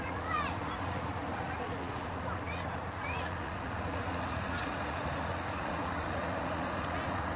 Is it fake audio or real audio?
fake